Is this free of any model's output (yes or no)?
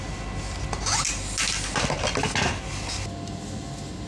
yes